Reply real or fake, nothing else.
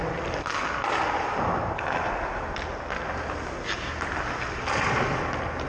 real